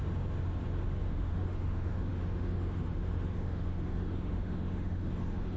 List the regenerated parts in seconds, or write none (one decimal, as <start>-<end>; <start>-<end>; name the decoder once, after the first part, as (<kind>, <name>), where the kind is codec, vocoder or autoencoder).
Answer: 1.1-5.6 (autoencoder, DAC-VAE)